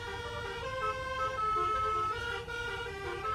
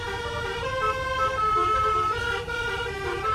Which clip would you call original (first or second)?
first